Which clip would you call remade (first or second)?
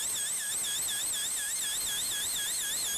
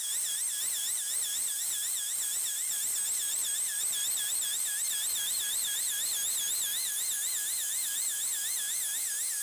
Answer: second